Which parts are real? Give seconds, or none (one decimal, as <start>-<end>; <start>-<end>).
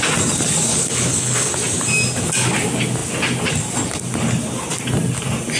0.0-0.7; 1.5-5.6